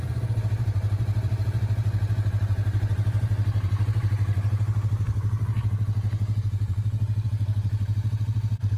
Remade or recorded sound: remade